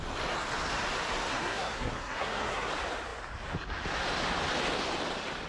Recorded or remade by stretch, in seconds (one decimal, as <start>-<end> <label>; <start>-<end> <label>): 0.0-1.3 recorded; 1.3-2.7 remade; 2.7-5.5 recorded